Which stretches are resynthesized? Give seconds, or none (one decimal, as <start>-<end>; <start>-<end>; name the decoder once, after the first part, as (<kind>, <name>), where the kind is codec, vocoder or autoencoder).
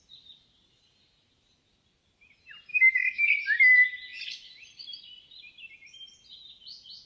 2.7-3.3 (autoencoder, DAC-VAE)